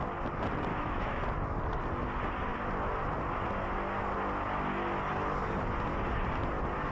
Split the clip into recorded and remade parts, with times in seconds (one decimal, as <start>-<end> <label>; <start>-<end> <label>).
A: 0.0-0.7 recorded; 0.7-1.2 remade; 1.2-6.9 recorded